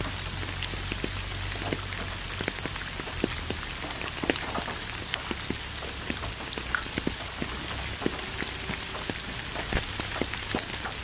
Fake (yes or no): no